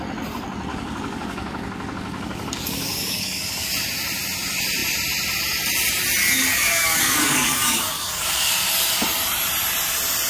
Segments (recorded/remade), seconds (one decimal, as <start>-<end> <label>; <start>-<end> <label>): 0.0-0.7 recorded; 0.7-3.7 remade; 3.7-6.2 recorded; 6.2-8.5 remade; 8.5-10.3 recorded